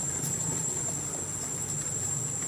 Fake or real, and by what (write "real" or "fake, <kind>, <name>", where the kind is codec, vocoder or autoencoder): real